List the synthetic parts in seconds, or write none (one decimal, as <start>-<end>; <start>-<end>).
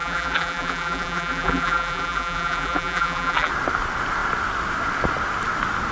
0.0-3.5